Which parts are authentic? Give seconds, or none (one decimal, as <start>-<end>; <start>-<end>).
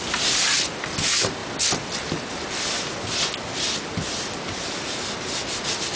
0.0-6.0